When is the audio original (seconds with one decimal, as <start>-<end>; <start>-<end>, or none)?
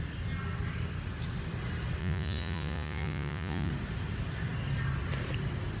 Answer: 0.0-2.0; 3.7-5.8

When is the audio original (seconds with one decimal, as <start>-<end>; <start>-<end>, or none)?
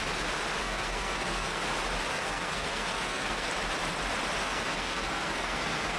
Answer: 0.0-0.6; 1.6-2.1; 3.5-4.4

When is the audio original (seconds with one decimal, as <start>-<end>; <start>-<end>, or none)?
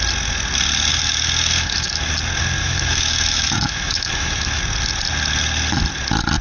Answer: 0.0-0.9; 2.1-2.6; 4.6-6.4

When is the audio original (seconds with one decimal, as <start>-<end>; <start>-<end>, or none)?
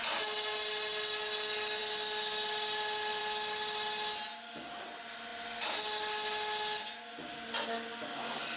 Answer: 0.0-8.6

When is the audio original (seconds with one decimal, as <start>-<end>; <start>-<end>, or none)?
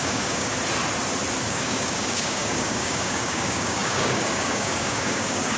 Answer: 0.5-1.4